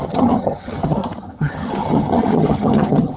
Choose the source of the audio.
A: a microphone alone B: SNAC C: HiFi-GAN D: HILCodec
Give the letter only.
C